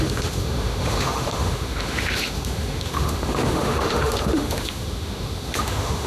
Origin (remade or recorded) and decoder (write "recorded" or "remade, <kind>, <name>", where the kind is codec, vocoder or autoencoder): remade, autoencoder, DAC-VAE